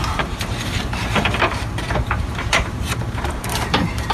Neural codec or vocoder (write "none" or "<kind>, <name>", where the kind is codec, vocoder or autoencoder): vocoder, BigVGAN v2